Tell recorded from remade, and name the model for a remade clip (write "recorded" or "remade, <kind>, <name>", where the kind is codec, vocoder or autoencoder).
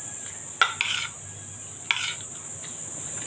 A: recorded